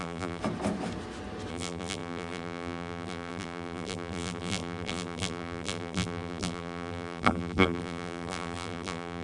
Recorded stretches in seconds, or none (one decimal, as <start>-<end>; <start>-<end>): 0.4-1.5